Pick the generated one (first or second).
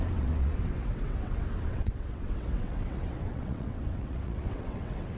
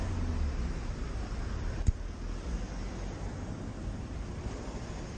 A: first